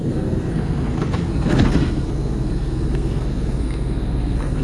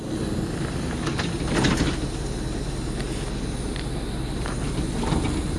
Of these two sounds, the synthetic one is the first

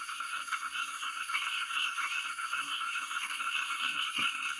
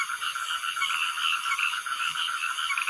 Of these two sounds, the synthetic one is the first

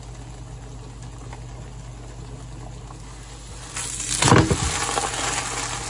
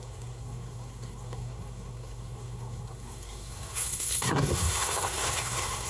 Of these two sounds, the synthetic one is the second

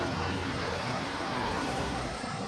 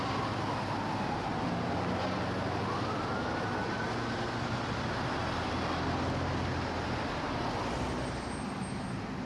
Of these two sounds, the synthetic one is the first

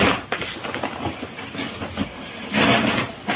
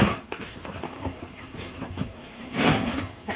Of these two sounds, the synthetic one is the second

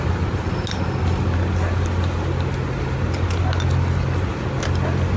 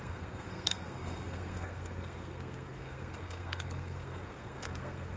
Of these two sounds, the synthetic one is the second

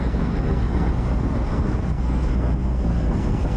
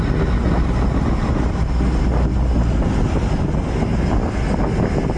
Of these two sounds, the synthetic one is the first